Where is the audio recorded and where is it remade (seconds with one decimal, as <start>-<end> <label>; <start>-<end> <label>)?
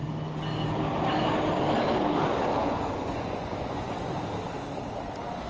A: 0.0-2.6 recorded; 2.6-4.1 remade; 4.1-5.5 recorded